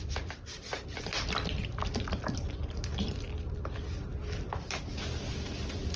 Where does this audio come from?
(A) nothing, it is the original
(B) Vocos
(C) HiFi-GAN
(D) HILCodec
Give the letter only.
A